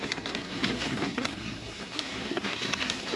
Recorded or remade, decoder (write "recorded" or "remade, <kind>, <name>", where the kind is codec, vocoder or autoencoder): remade, codec, SNAC